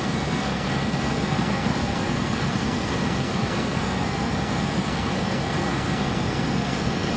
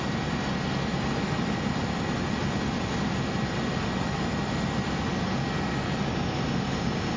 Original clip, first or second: second